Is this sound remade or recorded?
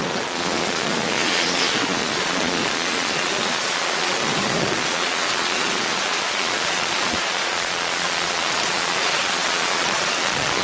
remade